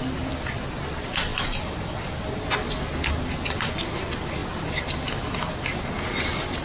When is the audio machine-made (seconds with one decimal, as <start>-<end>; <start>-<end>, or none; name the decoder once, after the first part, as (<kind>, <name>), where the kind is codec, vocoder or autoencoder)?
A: 1.3-2.5 (vocoder, BigVGAN v2); 4.4-5.5